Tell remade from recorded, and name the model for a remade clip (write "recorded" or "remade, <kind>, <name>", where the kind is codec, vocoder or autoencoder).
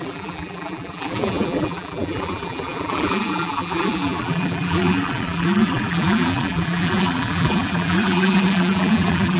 remade, vocoder, BigVGAN v2